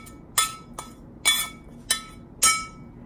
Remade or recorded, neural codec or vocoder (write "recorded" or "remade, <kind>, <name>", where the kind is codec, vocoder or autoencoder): recorded